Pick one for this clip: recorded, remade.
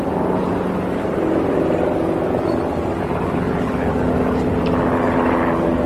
recorded